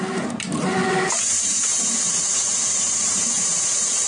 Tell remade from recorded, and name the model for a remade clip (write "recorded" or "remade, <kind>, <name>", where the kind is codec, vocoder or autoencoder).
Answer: remade, vocoder, BigVGAN v2